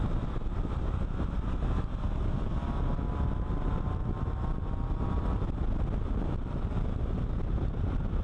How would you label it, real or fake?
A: real